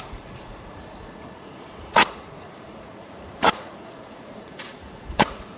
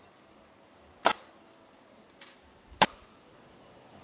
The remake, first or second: first